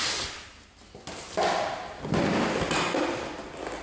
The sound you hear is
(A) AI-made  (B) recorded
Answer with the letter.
B